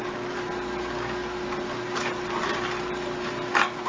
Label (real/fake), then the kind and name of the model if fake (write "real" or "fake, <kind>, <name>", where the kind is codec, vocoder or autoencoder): real